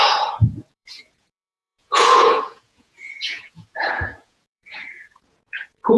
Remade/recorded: remade